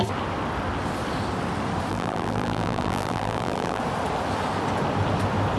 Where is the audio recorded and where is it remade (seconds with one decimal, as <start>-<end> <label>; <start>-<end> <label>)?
0.0-1.9 recorded; 1.9-3.8 remade; 3.8-5.6 recorded